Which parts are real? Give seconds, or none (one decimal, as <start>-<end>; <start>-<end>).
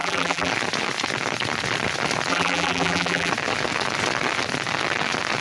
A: 0.5-2.3; 3.3-5.4